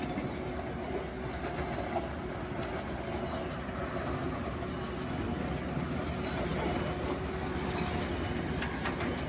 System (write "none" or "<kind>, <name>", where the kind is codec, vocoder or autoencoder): none